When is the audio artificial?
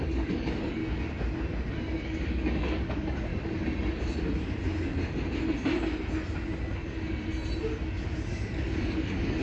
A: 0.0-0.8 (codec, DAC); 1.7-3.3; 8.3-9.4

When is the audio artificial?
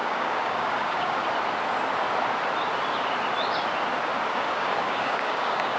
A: 0.0-1.2 (codec, DAC); 4.3-5.8